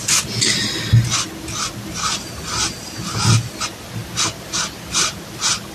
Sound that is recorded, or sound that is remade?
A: recorded